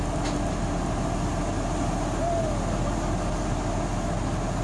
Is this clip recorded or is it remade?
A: recorded